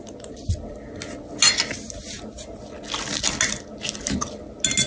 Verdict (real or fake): real